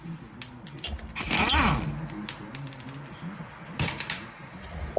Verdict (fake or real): real